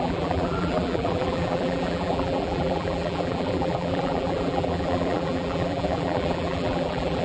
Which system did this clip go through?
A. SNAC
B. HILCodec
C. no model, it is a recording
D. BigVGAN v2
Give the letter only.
D